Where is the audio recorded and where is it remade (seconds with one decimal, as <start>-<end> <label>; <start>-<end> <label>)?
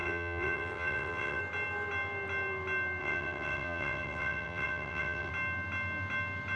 0.0-1.4 remade; 1.4-3.0 recorded; 3.0-5.3 remade; 5.3-6.6 recorded